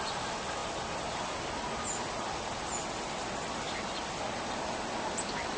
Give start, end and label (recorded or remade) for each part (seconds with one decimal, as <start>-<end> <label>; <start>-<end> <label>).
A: 0.0-5.6 recorded